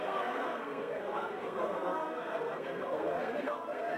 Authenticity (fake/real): fake